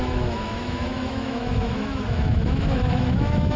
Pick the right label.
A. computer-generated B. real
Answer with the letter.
A